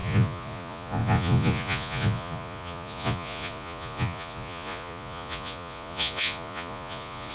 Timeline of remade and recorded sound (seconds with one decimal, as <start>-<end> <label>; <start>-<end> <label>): 0.0-7.3 remade